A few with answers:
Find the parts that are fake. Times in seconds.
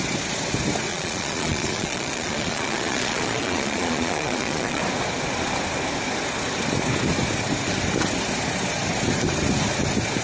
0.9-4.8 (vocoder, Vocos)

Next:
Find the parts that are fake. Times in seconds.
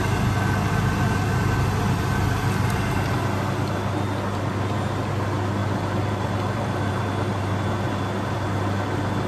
5.6-6.9 (vocoder, BigVGAN v2)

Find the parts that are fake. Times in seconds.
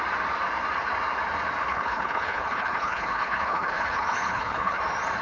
1.7-4.8 (codec, HILCodec)